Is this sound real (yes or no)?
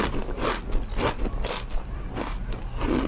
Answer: yes